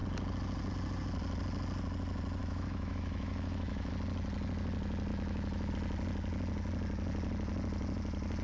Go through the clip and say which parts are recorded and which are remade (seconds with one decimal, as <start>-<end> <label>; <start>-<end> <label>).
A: 0.0-2.4 recorded; 2.4-3.9 remade; 3.9-5.1 recorded; 5.1-5.7 remade; 5.7-8.4 recorded